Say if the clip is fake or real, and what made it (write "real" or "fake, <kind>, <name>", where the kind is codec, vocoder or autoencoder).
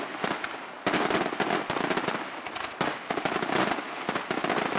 real